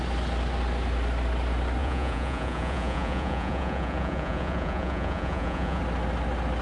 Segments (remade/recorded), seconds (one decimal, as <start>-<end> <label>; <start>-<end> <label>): 0.0-1.8 recorded; 1.8-5.8 remade; 5.8-6.6 recorded